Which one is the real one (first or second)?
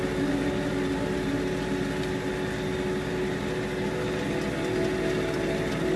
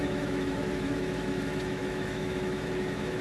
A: first